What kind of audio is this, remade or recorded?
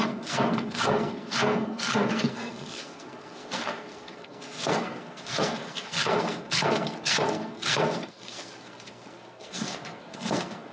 remade